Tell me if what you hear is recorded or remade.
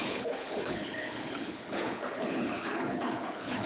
remade